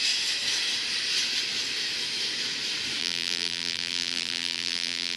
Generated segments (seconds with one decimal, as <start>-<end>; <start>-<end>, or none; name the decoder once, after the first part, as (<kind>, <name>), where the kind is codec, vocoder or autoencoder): 3.0-5.2 (vocoder, BigVGAN v2)